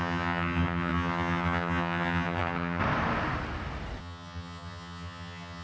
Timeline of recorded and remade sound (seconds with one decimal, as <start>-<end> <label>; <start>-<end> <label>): 0.0-2.8 remade; 2.8-4.0 recorded; 4.0-5.6 remade